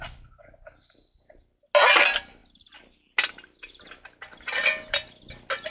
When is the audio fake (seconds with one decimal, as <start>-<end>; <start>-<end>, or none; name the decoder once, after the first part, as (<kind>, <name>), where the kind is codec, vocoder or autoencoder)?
none